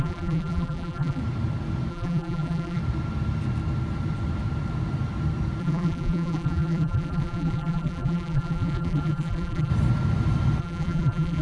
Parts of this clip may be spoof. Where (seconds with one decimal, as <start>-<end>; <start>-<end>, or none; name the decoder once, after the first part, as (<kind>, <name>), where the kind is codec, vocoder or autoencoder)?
0.0-1.2 (vocoder, BigVGAN v2); 1.9-2.8; 5.6-9.7; 10.6-11.4